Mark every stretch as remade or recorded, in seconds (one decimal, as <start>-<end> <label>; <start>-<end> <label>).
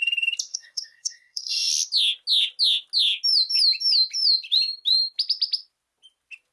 0.0-0.5 recorded; 0.5-1.7 remade; 1.7-6.5 recorded